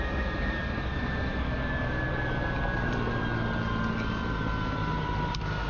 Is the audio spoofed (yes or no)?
no